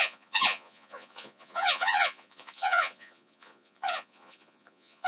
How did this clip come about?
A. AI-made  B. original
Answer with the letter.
A